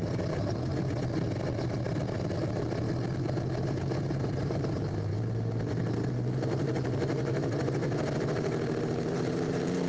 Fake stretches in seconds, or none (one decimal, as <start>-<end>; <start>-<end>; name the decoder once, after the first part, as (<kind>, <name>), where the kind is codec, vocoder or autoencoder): 0.0-0.7 (vocoder, BigVGAN v2); 3.3-7.8; 8.8-9.9

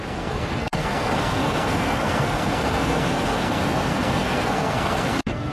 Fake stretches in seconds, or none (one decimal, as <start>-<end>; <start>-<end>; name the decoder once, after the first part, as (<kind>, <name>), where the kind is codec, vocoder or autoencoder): 0.0-5.5 (codec, SNAC)